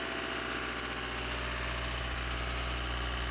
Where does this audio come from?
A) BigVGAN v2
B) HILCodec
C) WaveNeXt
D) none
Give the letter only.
D